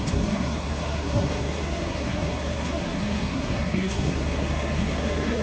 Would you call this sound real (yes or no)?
no